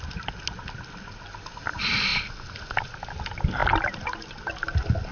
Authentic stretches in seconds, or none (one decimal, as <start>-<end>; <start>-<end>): 0.0-5.1